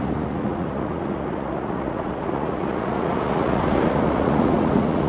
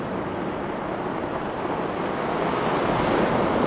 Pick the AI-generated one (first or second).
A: first